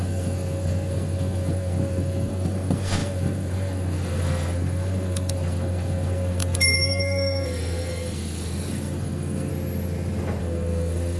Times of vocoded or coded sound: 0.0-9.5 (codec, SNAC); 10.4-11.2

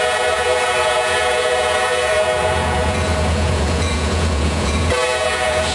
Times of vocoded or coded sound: 0.0-5.7 (vocoder, Vocos)

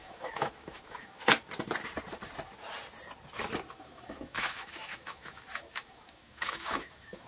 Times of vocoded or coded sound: 0.0-1.2 (autoencoder, DAC-VAE); 3.7-7.3

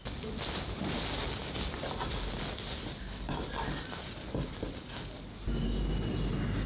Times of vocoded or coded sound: none

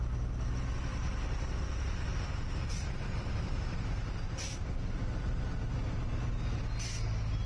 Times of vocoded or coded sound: 0.9-5.4 (vocoder, BigVGAN v2)

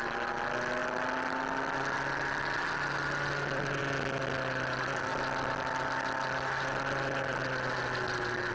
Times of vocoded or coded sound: none

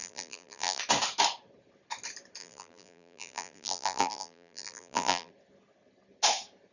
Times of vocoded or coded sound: 0.0-0.8 (vocoder, BigVGAN v2); 2.4-5.3